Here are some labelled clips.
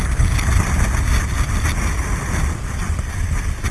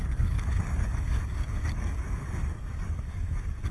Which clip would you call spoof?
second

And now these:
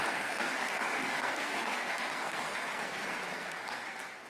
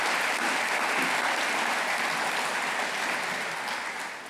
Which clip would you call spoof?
first